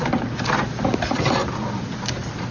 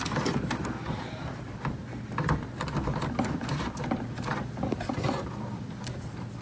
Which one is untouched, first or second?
first